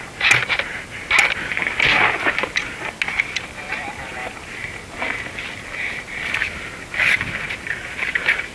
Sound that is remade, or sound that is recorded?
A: recorded